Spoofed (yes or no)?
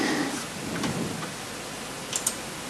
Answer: no